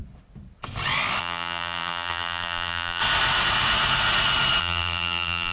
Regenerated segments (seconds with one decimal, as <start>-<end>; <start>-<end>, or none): 1.2-3.0; 4.6-5.5